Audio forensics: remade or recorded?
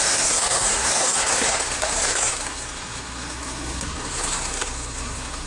remade